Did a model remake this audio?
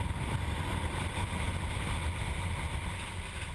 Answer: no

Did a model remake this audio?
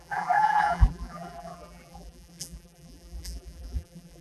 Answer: yes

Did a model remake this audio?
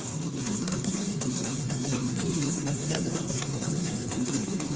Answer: yes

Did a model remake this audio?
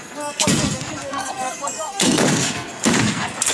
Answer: yes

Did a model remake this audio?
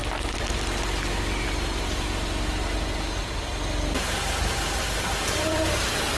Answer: no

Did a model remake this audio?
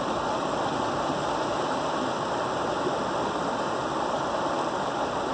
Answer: no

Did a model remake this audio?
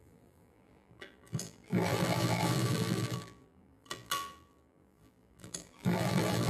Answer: yes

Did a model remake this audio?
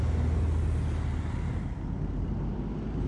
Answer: no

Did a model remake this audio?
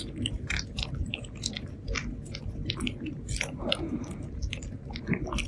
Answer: no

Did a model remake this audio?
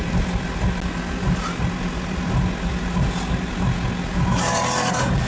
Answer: no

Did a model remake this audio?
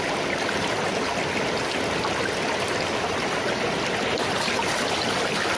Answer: no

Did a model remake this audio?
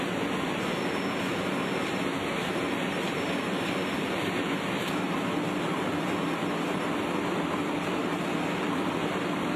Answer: no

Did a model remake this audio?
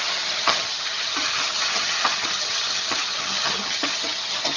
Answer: yes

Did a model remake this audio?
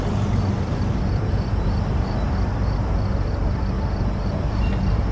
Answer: yes